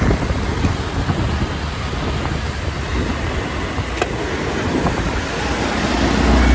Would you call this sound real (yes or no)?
yes